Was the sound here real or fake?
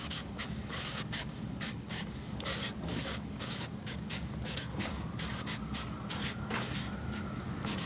fake